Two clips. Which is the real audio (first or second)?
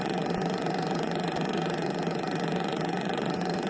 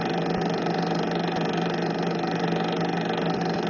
second